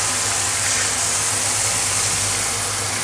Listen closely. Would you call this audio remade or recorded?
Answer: recorded